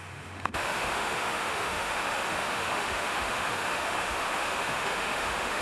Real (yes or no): no